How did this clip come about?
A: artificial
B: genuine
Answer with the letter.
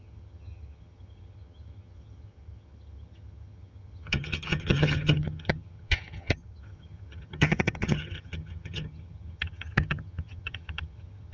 A